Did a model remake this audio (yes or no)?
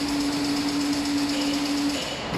no